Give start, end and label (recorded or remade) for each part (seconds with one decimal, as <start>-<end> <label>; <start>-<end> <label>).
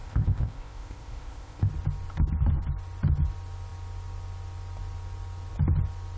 0.0-1.7 remade; 1.7-6.2 recorded